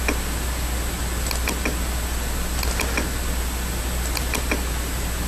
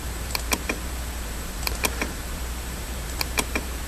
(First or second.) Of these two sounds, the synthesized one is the second